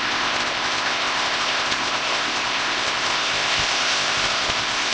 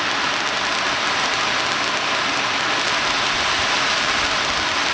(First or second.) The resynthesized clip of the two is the first